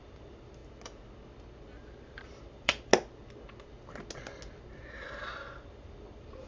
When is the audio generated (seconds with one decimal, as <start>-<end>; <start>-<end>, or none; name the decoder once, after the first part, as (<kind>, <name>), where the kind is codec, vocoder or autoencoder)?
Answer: 0.0-0.6 (vocoder, BigVGAN v2); 1.8-2.9; 5.3-6.5